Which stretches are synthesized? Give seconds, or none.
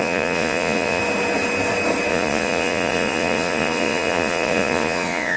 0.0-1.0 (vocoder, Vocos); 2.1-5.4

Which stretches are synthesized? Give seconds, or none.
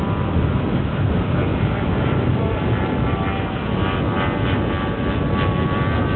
none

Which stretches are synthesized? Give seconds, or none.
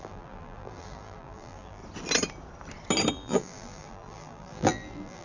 0.0-1.8 (vocoder, BigVGAN v2); 3.1-5.2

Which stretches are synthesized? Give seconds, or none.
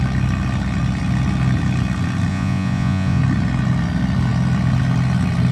2.3-3.2 (vocoder, Vocos)